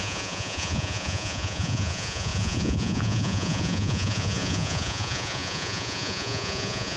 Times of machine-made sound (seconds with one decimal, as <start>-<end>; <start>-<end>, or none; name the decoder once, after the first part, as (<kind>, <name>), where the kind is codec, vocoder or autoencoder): 0.0-7.0 (vocoder, Vocos)